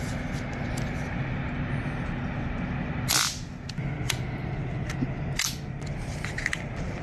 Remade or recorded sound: recorded